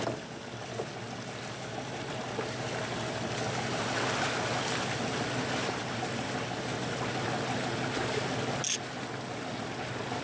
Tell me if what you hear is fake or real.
real